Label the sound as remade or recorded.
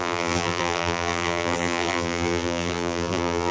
remade